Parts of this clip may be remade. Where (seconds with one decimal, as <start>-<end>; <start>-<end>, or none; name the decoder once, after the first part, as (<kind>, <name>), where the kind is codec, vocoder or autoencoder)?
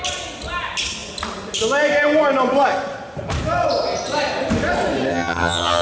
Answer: 5.1-5.8 (vocoder, HiFi-GAN)